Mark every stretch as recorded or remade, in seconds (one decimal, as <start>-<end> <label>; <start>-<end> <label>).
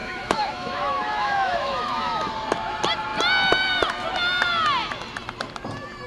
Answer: 0.0-2.3 remade; 2.3-6.1 recorded